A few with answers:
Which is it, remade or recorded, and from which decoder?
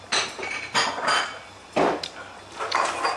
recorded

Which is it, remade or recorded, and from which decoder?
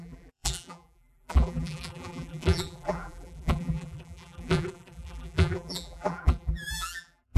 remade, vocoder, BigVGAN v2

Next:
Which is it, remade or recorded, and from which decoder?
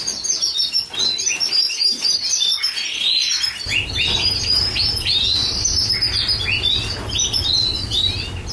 recorded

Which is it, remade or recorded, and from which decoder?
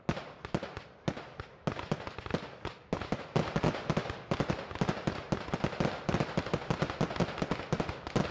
recorded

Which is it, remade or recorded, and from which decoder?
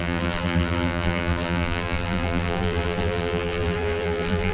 remade, vocoder, BigVGAN v2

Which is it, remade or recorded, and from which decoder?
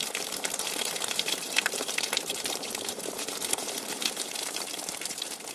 remade, vocoder, BigVGAN v2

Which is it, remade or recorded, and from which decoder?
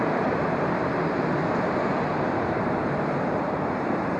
remade, vocoder, BigVGAN v2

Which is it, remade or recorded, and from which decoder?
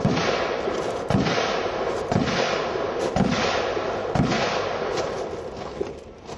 recorded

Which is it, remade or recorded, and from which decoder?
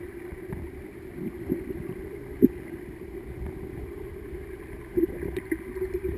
remade, vocoder, BigVGAN v2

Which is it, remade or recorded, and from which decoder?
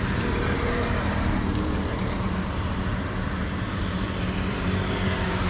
remade, vocoder, BigVGAN v2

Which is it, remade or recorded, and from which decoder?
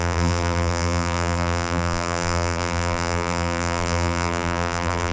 remade, vocoder, BigVGAN v2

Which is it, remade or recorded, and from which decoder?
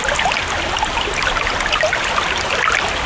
recorded